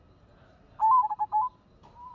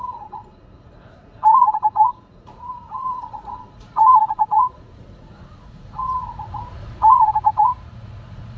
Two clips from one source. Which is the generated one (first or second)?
second